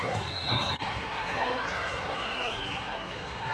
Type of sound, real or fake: fake